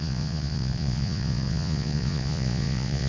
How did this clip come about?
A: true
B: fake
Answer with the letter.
B